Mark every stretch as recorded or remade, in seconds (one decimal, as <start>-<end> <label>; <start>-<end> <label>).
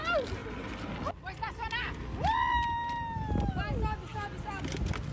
0.0-5.1 recorded